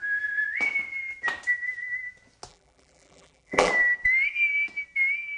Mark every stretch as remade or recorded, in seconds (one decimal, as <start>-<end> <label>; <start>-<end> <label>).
0.0-2.5 recorded; 2.5-3.7 remade; 3.7-5.4 recorded